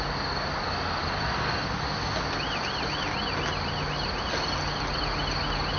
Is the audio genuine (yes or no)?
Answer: yes